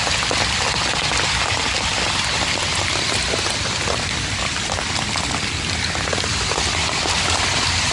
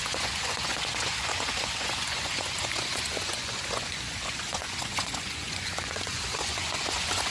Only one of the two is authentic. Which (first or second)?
first